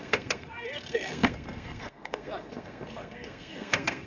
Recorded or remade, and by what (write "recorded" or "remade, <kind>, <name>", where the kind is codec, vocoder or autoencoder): remade, codec, SNAC